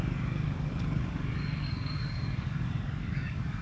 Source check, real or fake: fake